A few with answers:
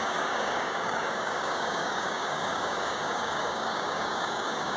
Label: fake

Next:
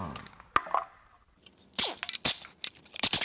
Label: real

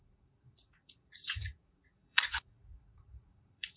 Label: fake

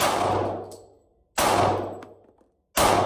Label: real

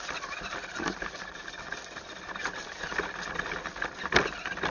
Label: real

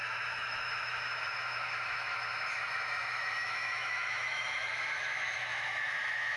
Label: fake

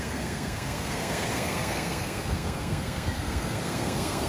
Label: fake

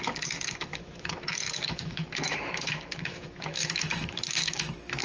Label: fake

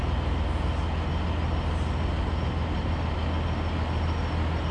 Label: real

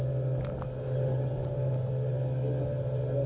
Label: real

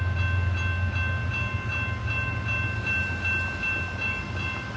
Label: real